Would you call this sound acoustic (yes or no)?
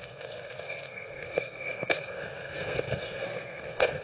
no